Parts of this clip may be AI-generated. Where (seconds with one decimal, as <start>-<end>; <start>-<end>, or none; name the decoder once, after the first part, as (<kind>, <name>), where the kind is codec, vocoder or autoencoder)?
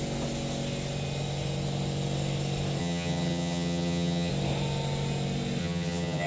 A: 2.8-4.3 (vocoder, HiFi-GAN); 5.6-6.3